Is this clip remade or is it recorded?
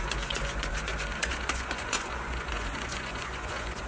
remade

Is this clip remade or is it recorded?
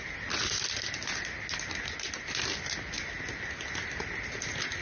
recorded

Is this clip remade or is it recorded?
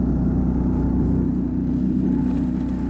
recorded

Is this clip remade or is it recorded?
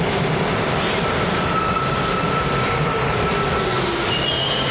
recorded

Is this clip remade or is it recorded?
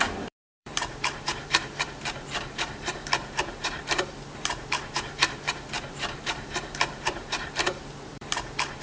remade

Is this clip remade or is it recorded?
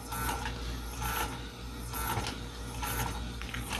recorded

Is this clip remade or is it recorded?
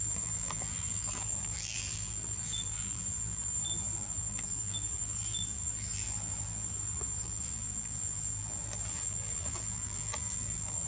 remade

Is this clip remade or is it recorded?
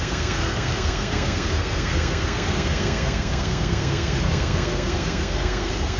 remade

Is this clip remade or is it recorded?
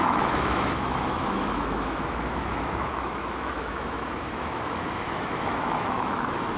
remade